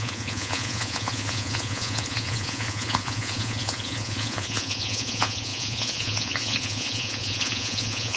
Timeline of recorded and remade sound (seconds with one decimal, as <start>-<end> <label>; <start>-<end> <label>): 0.0-8.2 remade